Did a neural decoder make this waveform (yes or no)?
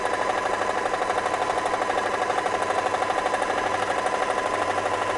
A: no